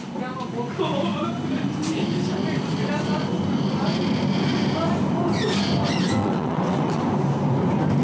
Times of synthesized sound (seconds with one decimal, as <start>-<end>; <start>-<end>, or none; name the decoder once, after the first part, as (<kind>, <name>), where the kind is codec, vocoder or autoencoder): 6.2-7.0 (vocoder, WaveNeXt)